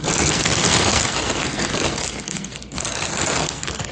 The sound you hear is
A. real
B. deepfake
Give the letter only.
B